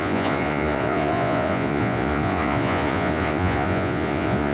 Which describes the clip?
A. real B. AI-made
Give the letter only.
B